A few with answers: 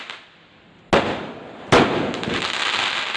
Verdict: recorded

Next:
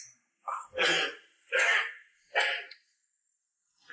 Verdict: recorded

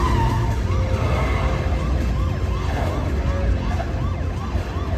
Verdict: recorded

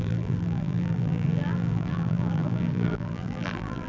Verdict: remade